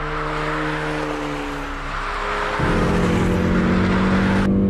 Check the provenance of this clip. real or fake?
real